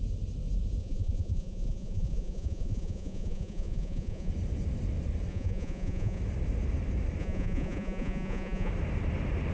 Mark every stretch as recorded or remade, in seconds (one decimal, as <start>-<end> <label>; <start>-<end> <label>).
0.0-0.8 recorded; 0.8-4.3 remade; 4.3-5.3 recorded; 5.3-6.2 remade; 6.2-7.2 recorded; 7.2-8.7 remade; 8.7-9.5 recorded